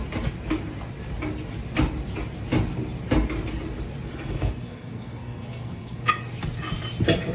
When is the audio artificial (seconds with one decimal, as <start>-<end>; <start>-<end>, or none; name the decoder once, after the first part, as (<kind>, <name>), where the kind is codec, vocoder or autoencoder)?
4.1-6.1 (codec, SNAC)